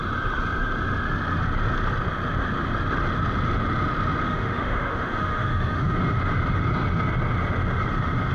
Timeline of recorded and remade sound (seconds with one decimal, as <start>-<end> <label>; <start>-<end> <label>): 0.0-4.3 recorded; 4.3-6.0 remade; 6.0-8.3 recorded